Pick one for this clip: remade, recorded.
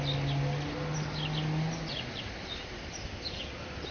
recorded